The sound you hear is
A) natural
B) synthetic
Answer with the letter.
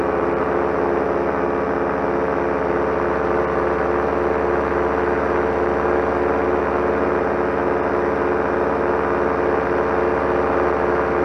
A